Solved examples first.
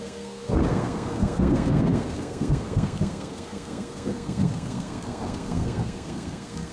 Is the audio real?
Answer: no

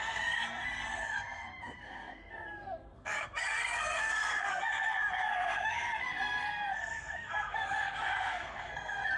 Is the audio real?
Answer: no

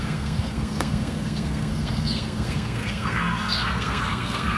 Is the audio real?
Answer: no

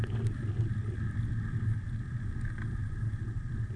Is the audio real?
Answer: yes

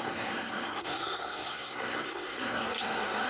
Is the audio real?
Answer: no